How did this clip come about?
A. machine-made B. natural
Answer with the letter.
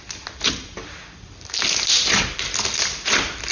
B